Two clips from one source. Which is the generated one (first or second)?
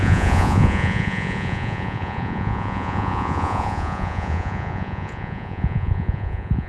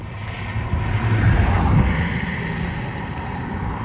first